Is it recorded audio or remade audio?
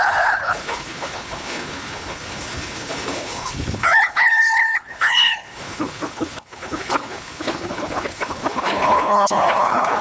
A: remade